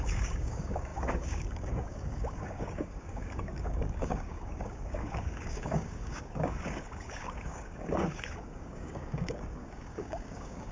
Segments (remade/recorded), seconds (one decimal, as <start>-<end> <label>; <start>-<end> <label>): 0.0-10.7 remade